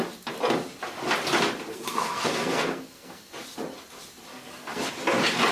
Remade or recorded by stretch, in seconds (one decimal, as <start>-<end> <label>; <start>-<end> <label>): 0.0-1.7 recorded; 1.7-3.3 remade; 3.3-4.3 recorded; 4.3-4.9 remade; 4.9-5.5 recorded

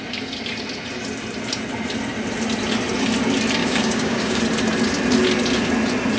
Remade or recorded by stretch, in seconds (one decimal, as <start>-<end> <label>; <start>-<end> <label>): 0.0-3.6 recorded; 3.6-4.4 remade; 4.4-6.2 recorded